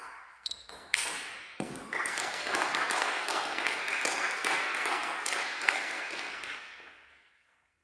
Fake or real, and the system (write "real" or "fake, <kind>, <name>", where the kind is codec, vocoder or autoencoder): fake, codec, SNAC